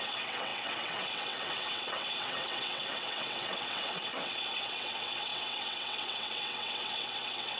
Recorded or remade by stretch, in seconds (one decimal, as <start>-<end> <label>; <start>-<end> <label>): 0.0-7.6 remade